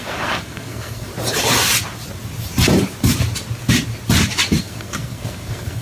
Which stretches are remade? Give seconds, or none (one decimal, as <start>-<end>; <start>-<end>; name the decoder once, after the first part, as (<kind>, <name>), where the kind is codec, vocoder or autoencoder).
0.0-1.1 (codec, SNAC); 4.6-5.8